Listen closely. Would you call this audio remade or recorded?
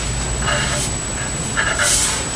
recorded